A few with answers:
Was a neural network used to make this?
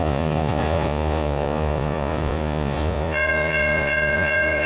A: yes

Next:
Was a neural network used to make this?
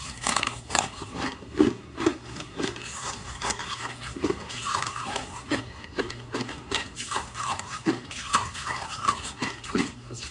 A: yes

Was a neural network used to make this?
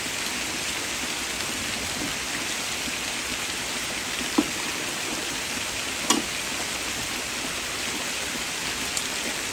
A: no